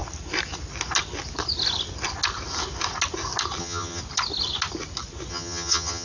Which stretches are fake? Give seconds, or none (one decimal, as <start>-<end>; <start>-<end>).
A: 3.6-4.0; 5.3-6.0